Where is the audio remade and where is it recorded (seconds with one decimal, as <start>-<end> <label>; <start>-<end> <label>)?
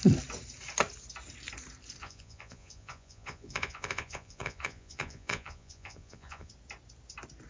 0.0-2.0 recorded; 2.0-6.5 remade; 6.5-7.5 recorded